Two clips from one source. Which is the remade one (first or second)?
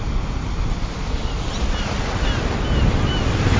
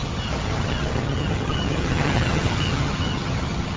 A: second